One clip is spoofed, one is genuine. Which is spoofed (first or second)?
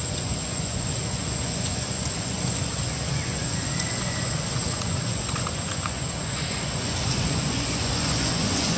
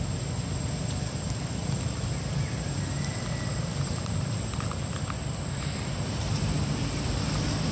first